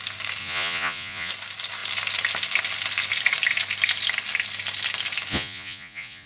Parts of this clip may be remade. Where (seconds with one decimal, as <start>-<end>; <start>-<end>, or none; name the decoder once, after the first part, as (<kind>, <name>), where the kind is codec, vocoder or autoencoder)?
0.4-1.3 (vocoder, Vocos); 5.3-6.3